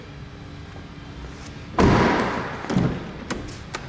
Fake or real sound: real